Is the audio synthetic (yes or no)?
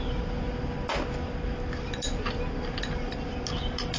no